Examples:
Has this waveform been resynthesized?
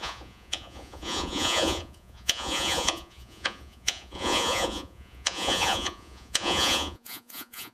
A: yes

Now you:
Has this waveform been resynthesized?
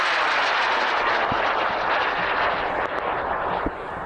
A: no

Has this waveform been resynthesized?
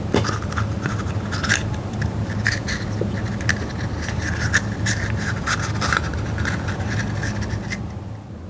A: no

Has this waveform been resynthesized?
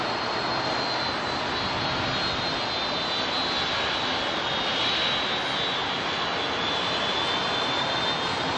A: no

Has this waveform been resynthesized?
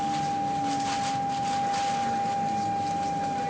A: no